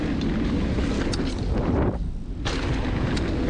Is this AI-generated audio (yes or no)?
no